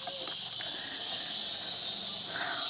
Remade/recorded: recorded